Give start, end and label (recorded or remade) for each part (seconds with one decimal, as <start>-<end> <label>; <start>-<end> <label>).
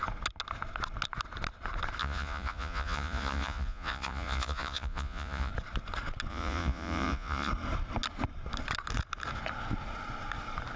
0.0-2.0 recorded; 2.0-5.5 remade; 5.5-6.3 recorded; 6.3-7.5 remade; 7.5-10.8 recorded